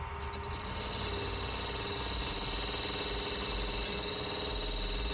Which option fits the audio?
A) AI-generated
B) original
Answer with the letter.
B